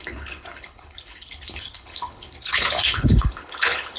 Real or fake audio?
fake